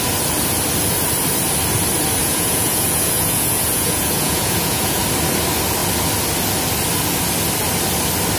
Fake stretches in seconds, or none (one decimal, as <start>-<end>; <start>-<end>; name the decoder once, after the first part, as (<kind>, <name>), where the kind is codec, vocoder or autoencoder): 2.2-5.0 (vocoder, Vocos)